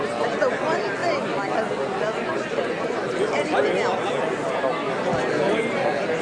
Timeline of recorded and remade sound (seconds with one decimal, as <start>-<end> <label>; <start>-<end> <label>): 0.0-6.2 recorded